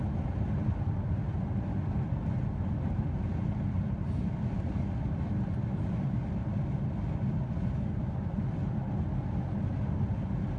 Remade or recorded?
recorded